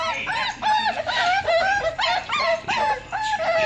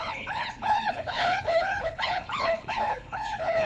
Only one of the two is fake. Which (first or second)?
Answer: second